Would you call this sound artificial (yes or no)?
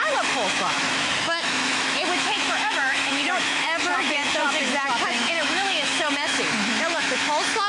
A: yes